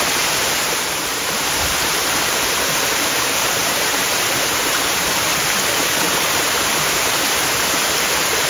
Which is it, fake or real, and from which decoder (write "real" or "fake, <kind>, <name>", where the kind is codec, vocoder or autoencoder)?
fake, vocoder, BigVGAN v2